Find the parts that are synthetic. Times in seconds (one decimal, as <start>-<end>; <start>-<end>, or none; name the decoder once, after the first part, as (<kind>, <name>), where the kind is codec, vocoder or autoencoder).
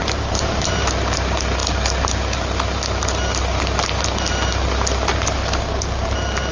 0.0-0.9 (vocoder, BigVGAN v2)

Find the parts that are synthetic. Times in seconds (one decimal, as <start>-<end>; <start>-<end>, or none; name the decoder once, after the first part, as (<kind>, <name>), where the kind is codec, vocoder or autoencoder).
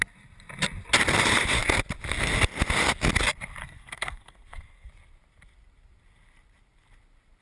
3.6-4.9 (codec, SNAC)